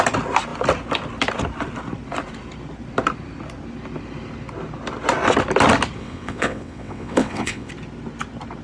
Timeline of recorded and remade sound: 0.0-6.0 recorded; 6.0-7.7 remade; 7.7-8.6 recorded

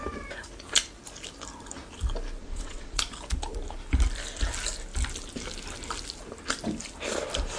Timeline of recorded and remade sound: 0.0-2.4 recorded; 2.4-3.0 remade; 3.0-7.6 recorded

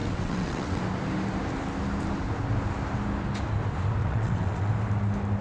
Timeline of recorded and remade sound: 0.0-0.8 remade; 0.8-4.0 recorded; 4.0-4.7 remade; 4.7-5.4 recorded